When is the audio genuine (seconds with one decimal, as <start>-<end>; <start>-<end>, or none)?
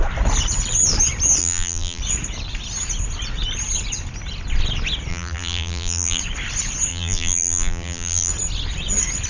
0.0-1.4; 2.0-5.1; 6.2-6.9; 8.3-9.3